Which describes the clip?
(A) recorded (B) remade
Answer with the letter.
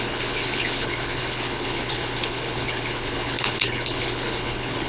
B